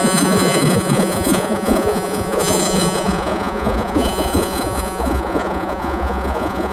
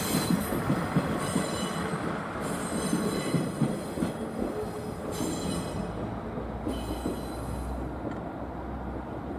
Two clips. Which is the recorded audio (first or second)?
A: second